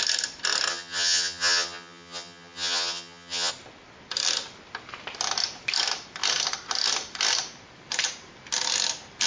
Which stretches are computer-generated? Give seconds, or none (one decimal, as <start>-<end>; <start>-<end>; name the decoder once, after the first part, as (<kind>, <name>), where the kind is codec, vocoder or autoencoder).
0.7-3.5 (vocoder, HiFi-GAN)